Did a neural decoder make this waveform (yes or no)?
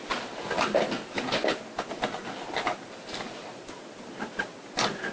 no